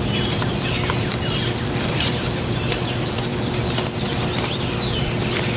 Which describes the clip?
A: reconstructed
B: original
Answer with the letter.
B